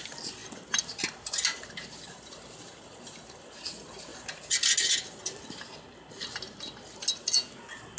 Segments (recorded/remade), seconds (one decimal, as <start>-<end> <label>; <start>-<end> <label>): 0.0-8.0 recorded